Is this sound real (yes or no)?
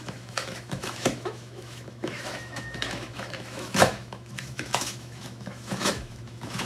no